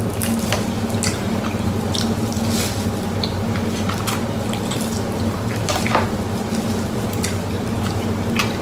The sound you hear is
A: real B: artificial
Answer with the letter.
A